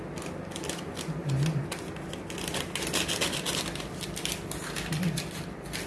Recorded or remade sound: recorded